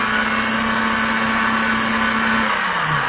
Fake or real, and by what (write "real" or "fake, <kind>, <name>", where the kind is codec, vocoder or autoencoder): real